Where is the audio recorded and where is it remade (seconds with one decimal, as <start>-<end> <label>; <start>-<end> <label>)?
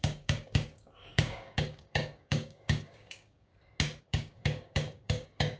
0.0-3.5 remade; 3.5-4.0 recorded; 4.0-5.6 remade